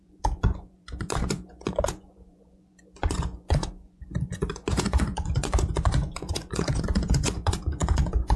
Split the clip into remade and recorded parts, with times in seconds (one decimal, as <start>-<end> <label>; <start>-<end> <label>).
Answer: 0.0-8.4 remade